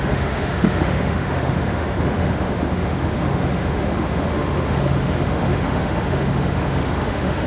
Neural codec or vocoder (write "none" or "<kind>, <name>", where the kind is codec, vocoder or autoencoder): autoencoder, DAC-VAE